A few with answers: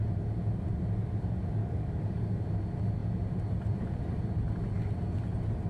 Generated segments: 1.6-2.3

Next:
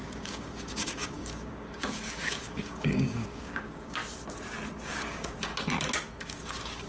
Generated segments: 0.0-4.0; 4.9-5.5; 6.2-6.9

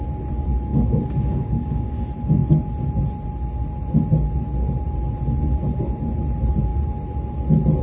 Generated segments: 0.7-1.9